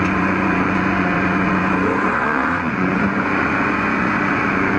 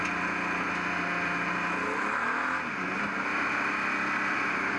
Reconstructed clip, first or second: first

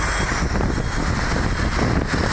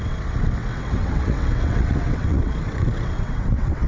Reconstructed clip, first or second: second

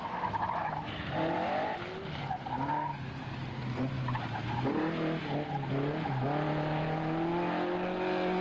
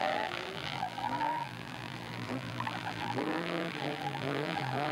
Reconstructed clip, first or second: second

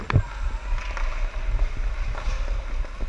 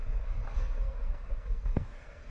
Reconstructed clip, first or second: second